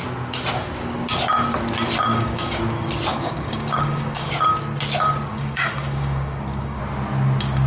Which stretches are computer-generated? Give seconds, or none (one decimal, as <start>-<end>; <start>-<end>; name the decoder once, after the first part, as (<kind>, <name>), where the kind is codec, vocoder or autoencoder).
2.1-2.6 (codec, DAC); 3.1-4.3; 5.3-6.8